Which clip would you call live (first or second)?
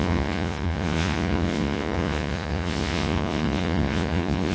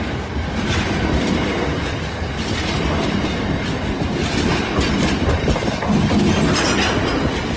second